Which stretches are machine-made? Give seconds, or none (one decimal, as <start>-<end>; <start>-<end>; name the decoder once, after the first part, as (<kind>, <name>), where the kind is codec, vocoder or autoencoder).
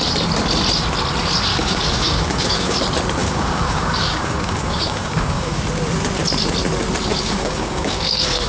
1.5-2.8 (codec, DAC); 3.2-5.6; 7.1-8.5